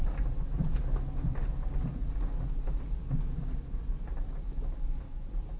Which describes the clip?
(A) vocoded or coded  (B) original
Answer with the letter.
B